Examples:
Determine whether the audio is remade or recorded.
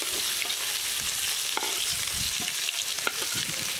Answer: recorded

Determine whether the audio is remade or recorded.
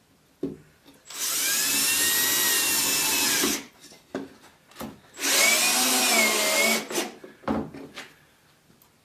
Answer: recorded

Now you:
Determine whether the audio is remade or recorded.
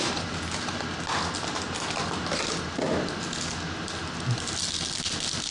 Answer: recorded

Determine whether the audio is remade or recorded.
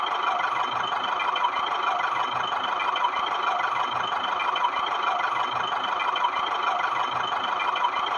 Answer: remade